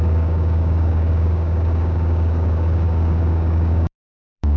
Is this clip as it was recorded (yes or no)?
no